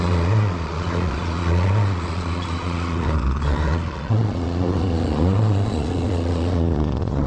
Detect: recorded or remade remade